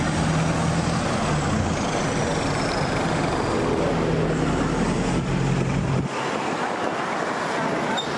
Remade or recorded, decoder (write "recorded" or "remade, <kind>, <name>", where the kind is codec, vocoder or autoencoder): recorded